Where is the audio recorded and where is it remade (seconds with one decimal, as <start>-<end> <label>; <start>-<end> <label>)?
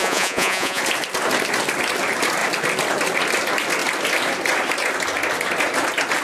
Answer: 0.0-0.8 remade; 0.8-6.2 recorded